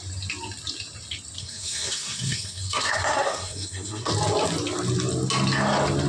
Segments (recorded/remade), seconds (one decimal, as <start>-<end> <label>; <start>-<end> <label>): 0.0-1.4 recorded; 1.4-4.1 remade; 4.1-6.1 recorded

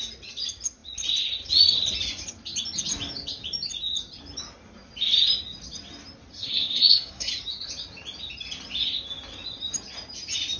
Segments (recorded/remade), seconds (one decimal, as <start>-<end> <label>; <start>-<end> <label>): 0.0-6.3 recorded; 6.3-7.3 remade; 7.3-10.6 recorded

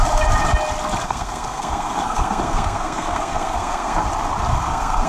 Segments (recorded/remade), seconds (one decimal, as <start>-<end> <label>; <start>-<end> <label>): 0.0-1.0 recorded; 1.0-4.1 remade; 4.1-4.5 recorded; 4.5-5.1 remade

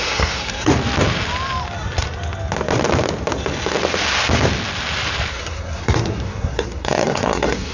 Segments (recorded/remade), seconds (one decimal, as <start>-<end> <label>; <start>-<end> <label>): 0.0-0.7 remade; 0.7-5.3 recorded; 5.3-7.7 remade